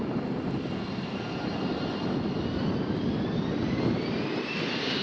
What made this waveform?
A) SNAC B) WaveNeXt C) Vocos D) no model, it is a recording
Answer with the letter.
D